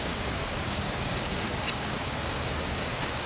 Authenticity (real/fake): fake